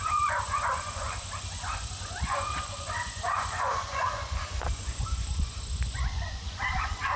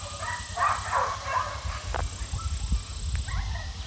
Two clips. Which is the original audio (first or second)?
second